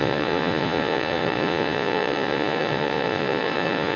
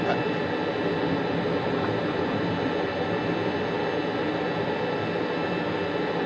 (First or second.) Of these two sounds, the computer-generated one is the first